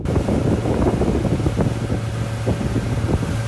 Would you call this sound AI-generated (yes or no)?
no